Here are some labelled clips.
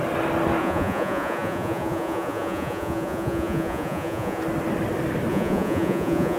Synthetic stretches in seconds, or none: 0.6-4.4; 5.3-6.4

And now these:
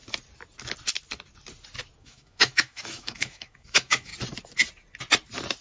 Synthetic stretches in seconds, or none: 2.0-4.1